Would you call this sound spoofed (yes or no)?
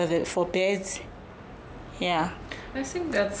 no